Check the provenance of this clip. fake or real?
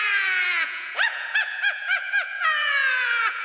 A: fake